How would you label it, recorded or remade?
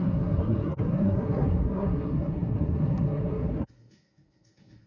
remade